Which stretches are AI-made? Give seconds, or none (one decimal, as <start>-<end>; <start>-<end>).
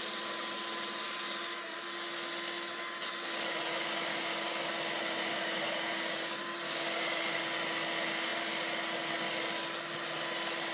4.1-4.6; 5.3-7.2